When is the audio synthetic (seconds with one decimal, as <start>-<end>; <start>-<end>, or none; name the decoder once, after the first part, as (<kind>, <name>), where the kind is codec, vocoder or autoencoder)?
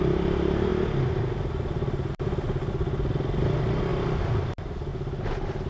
none